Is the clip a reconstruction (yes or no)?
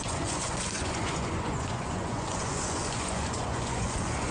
yes